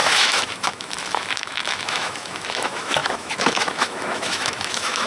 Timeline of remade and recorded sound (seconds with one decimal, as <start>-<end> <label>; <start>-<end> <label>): 0.0-5.1 remade